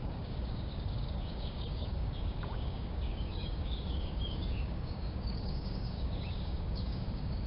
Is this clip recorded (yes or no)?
no